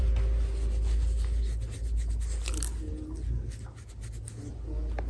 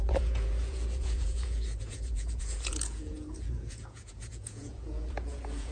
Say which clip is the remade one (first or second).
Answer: second